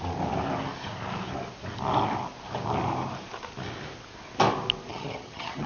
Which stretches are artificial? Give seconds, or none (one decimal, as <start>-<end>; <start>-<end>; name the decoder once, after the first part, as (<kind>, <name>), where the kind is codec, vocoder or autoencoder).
4.9-5.7 (vocoder, HiFi-GAN)